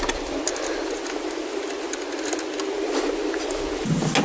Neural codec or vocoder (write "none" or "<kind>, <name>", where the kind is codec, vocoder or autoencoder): none